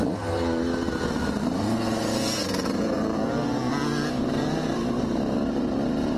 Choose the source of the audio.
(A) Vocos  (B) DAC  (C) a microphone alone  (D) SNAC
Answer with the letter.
C